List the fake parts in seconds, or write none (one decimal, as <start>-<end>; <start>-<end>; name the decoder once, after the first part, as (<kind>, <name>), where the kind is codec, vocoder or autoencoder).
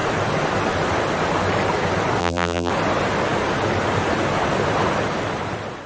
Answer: 2.2-2.7 (vocoder, BigVGAN v2)